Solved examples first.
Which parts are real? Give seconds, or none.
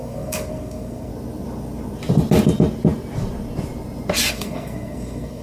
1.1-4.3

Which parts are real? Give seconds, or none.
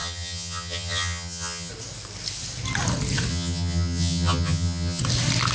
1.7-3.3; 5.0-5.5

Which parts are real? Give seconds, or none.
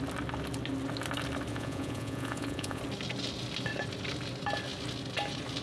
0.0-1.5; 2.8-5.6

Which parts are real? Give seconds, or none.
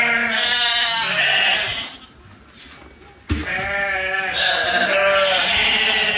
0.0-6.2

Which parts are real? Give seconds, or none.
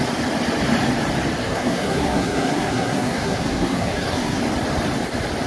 0.0-1.4; 4.4-5.5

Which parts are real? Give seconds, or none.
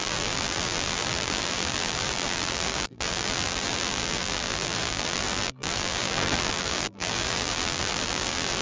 none